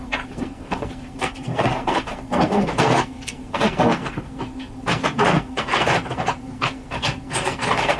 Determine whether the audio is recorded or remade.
remade